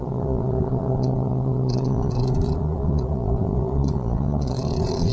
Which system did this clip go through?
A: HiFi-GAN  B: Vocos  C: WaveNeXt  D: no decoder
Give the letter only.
B